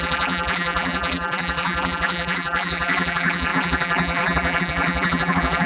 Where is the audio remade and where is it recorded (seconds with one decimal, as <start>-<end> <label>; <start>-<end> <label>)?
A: 0.0-5.7 remade